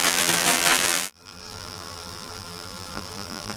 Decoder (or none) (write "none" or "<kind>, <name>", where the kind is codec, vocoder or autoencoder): vocoder, BigVGAN v2